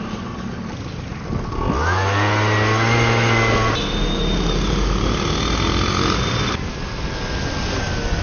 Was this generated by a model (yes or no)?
no